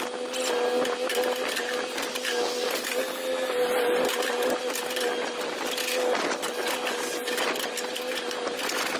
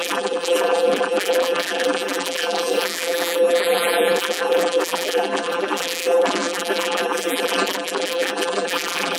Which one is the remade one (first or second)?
second